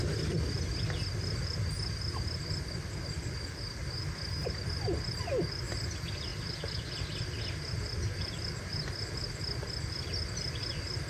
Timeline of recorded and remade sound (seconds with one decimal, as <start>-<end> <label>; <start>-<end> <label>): 0.0-11.1 recorded